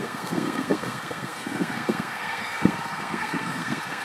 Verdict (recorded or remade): remade